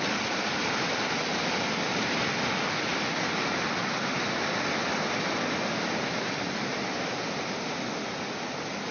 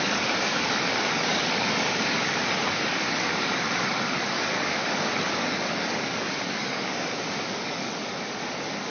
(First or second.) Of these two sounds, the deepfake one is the second